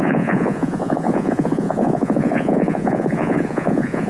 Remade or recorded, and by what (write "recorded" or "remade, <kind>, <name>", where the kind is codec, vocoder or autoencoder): remade, vocoder, Vocos